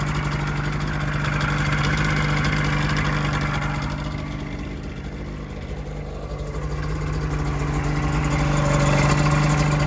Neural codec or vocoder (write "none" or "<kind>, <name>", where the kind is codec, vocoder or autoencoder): none